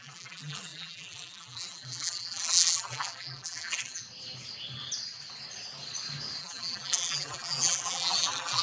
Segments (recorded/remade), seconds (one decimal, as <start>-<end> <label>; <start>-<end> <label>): 0.0-4.0 remade; 4.0-6.4 recorded; 6.4-8.6 remade